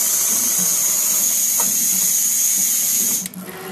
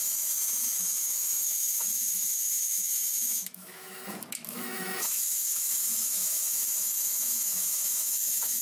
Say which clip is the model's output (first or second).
second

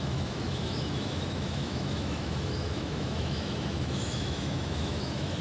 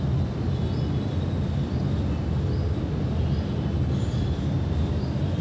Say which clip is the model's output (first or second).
first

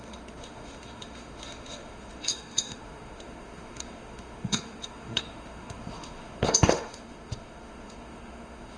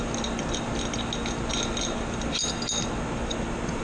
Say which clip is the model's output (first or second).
first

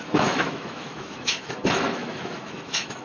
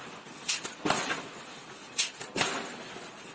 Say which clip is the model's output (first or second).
first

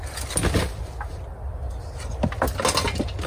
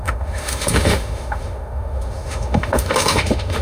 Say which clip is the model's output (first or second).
second